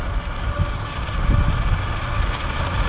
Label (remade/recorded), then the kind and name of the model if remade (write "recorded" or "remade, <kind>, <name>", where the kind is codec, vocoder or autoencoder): recorded